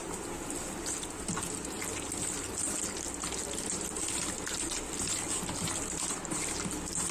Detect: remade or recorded recorded